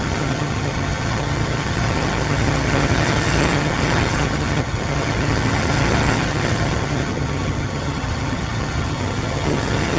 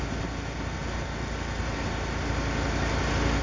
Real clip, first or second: second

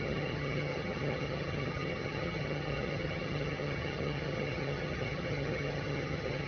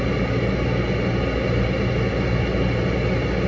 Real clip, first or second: second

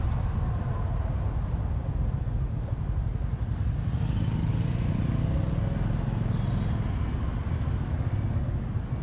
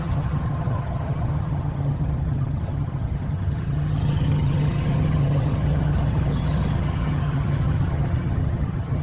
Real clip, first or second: first